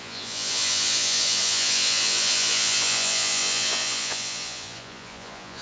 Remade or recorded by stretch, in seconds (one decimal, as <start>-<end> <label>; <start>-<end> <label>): 0.0-5.6 remade